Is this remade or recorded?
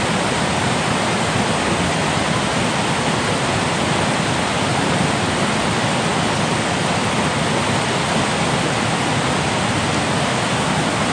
recorded